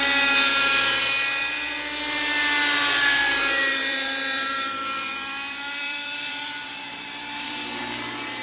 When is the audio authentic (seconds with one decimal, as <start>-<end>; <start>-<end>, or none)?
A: 0.0-0.5; 1.0-3.8; 7.8-8.4